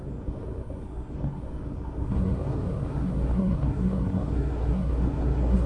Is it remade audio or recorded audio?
remade